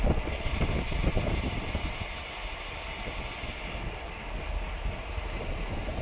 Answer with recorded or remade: recorded